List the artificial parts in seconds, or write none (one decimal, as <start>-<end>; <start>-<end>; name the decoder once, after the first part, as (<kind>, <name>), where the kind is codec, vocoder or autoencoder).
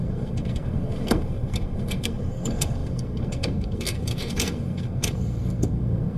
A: 0.0-6.2 (codec, SNAC)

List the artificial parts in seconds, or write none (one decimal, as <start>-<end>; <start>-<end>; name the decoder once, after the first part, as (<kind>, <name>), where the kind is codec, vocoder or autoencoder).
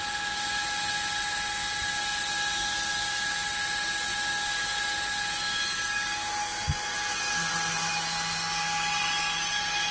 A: none